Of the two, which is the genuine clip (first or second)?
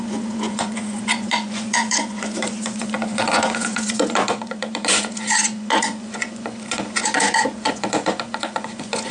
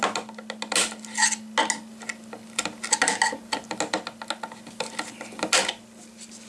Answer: second